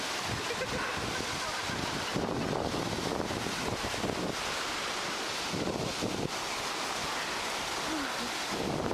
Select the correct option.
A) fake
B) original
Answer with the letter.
B